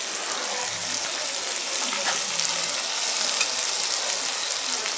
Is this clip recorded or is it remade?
recorded